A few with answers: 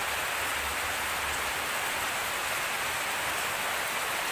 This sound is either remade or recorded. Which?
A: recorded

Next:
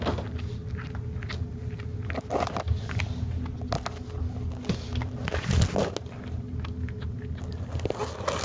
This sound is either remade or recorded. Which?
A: recorded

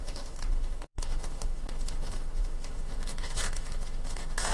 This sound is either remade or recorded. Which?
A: remade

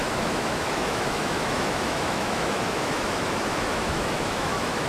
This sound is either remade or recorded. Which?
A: remade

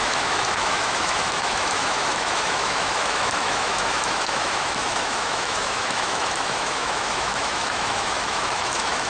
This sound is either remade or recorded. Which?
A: remade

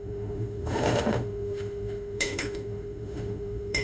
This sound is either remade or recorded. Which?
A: remade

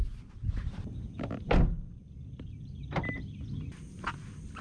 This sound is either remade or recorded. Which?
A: recorded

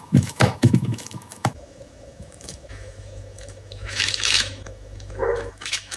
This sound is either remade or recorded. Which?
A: remade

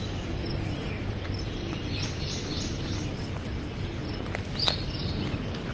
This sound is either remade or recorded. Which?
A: recorded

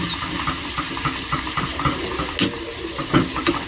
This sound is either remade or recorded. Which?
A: recorded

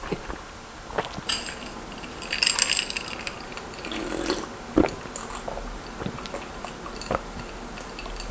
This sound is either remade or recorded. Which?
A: recorded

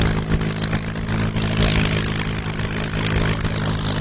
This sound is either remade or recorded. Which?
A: recorded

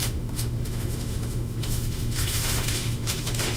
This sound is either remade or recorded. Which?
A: remade